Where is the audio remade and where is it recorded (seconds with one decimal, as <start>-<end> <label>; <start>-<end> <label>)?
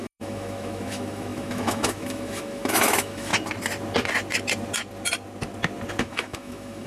0.0-3.3 remade; 3.3-6.0 recorded; 6.0-6.9 remade